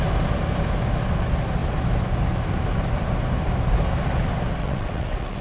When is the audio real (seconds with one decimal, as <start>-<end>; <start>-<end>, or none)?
0.0-4.6